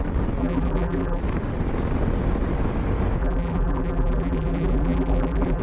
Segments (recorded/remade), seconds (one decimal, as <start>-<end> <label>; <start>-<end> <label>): 0.0-0.4 recorded; 0.4-1.2 remade; 1.2-3.2 recorded; 3.2-5.6 remade

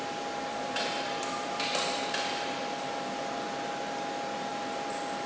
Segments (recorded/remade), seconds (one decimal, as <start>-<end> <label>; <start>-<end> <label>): 0.0-0.5 recorded; 0.5-3.7 remade; 3.7-5.3 recorded

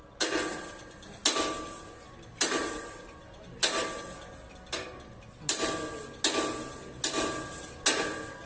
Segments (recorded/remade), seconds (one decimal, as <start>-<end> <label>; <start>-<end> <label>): 0.0-2.3 recorded; 2.3-3.8 remade; 3.8-8.5 recorded

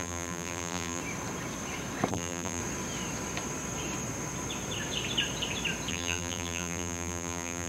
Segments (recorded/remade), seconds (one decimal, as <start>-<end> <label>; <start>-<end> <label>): 0.0-1.0 remade; 1.0-2.1 recorded; 2.1-2.6 remade; 2.6-5.9 recorded; 5.9-7.7 remade